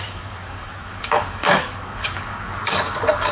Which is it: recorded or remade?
remade